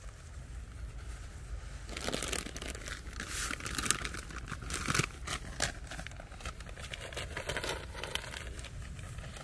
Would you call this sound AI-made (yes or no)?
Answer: no